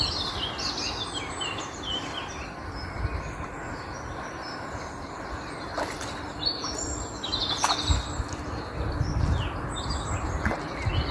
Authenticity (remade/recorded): recorded